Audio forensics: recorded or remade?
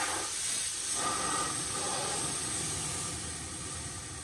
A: recorded